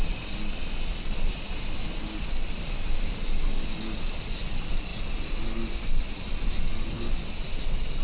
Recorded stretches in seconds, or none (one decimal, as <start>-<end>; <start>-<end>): 0.0-8.0